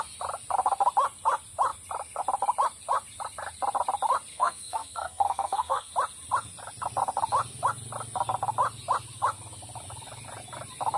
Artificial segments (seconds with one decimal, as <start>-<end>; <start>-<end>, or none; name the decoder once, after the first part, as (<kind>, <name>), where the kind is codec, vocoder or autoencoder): 4.3-5.9 (codec, SNAC)